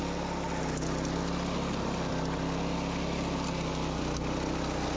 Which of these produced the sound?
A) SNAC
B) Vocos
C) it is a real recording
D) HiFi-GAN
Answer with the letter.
C